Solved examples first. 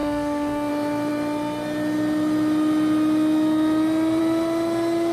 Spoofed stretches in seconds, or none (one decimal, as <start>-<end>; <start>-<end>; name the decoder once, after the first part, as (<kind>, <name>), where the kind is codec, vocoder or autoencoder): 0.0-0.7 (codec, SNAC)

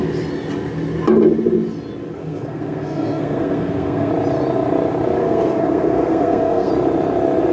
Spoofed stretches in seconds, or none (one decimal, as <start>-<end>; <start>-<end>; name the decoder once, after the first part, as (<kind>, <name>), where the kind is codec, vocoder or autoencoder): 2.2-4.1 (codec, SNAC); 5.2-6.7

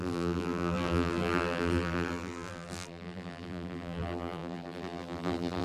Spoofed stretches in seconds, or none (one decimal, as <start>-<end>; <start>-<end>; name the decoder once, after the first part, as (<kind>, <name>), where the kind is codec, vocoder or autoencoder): 0.0-5.6 (vocoder, BigVGAN v2)